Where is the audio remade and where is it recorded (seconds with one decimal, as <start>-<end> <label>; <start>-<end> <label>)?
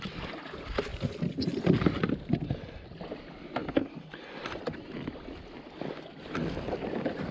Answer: 0.0-7.3 recorded